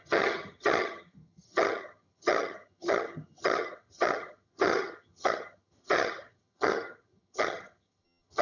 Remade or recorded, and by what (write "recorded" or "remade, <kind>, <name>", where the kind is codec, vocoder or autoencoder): remade, vocoder, HiFi-GAN